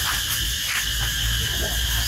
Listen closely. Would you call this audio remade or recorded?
recorded